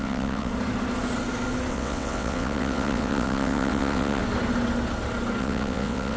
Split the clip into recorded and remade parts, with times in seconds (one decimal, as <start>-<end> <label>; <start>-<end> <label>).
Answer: 0.0-0.5 remade; 0.5-1.7 recorded; 1.7-4.2 remade; 4.2-5.4 recorded; 5.4-6.2 remade